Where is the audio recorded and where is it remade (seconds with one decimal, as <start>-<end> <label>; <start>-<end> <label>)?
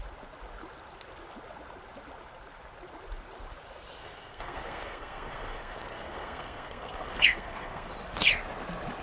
0.0-4.0 recorded; 4.0-7.9 remade; 7.9-9.0 recorded